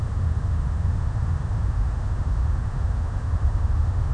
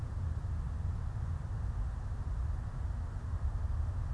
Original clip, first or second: second